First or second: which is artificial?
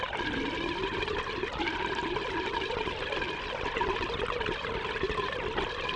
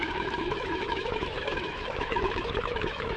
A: second